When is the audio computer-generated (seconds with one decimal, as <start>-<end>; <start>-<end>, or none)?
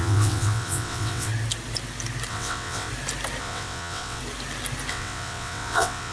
0.0-1.3; 2.3-2.9; 3.4-4.2; 4.9-6.1